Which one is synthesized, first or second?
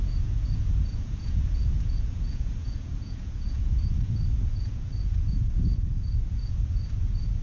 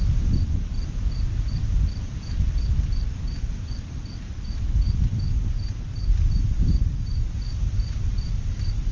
first